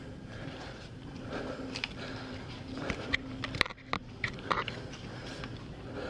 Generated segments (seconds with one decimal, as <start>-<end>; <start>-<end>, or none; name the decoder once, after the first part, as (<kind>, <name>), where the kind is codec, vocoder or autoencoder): 0.0-3.7 (vocoder, BigVGAN v2)